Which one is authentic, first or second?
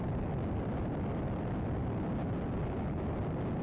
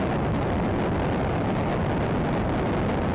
second